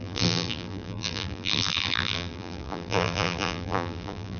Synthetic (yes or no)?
yes